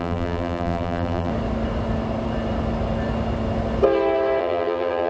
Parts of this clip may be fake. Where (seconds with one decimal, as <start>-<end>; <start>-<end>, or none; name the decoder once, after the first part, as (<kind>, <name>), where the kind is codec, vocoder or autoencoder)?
0.0-1.3 (vocoder, BigVGAN v2); 4.4-5.1